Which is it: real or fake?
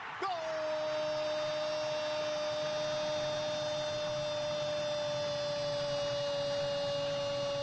real